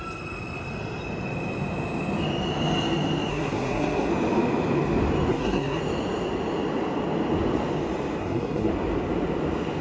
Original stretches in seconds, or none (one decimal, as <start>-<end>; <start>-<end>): 0.0-3.3; 4.1-5.3; 5.8-8.2; 8.7-9.8